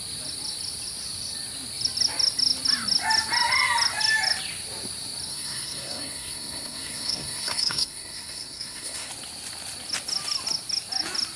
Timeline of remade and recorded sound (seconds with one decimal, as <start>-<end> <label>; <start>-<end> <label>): 0.0-5.3 recorded; 5.3-9.1 remade; 9.1-11.4 recorded